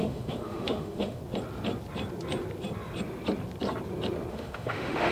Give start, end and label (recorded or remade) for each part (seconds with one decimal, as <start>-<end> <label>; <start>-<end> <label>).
0.0-1.2 remade; 1.2-4.3 recorded; 4.3-5.1 remade